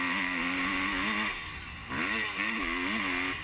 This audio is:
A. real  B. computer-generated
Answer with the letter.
A